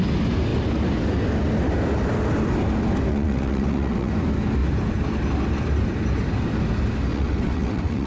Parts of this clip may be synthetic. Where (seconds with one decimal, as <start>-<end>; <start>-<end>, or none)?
3.1-4.1; 7.1-8.1